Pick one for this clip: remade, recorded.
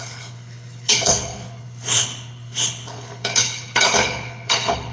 remade